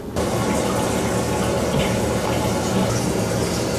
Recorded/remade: recorded